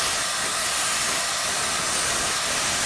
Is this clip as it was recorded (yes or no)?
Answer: yes